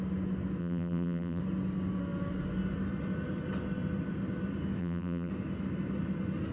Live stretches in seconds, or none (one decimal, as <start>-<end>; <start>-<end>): 0.0-0.6; 1.4-4.8; 5.3-6.5